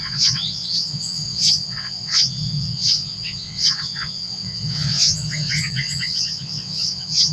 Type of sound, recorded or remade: remade